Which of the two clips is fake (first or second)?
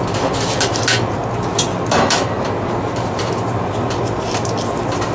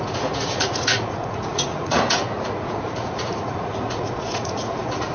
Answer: second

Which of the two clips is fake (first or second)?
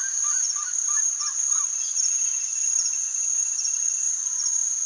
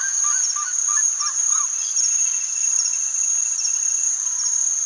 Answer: first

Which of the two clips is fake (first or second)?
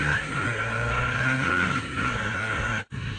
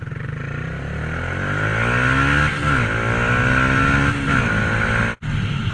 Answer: first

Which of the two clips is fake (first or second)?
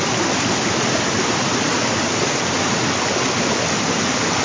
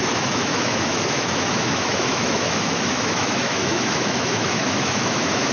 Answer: second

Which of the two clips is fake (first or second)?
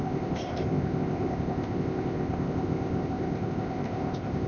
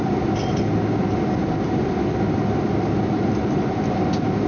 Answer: first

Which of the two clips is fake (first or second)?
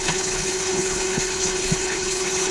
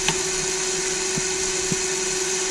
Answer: first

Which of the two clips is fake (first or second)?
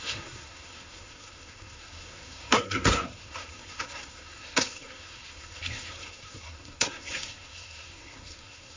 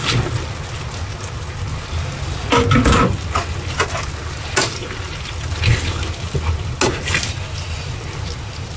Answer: first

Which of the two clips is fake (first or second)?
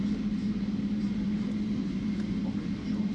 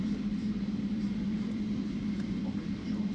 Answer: second